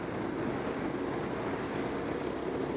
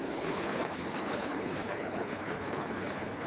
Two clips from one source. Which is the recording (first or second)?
first